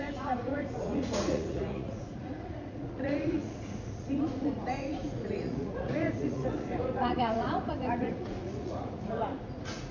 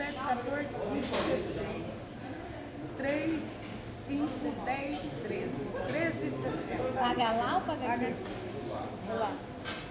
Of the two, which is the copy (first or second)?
first